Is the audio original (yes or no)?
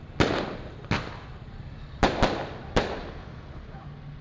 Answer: yes